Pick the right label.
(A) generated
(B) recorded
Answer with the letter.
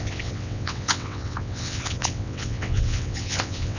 A